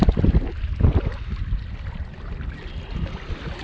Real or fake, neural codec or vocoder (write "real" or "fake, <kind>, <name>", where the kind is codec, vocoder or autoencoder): real